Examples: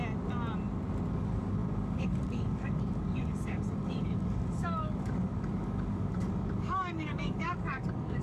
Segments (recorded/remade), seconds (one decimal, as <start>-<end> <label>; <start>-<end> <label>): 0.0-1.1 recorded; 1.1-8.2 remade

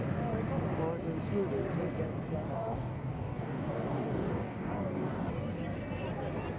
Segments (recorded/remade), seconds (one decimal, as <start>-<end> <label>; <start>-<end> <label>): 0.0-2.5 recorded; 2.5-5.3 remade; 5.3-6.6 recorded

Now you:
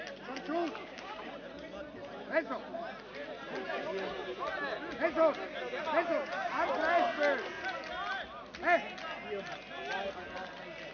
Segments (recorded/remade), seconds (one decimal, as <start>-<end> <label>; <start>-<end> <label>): 0.0-0.8 recorded; 0.8-1.3 remade; 1.3-10.9 recorded